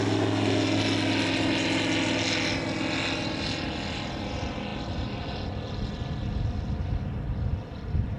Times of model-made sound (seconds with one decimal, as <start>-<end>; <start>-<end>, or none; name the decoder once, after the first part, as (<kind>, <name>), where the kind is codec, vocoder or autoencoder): none